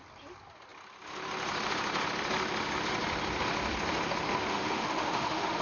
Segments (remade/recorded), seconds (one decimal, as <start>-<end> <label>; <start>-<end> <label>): 0.0-4.5 recorded; 4.5-5.6 remade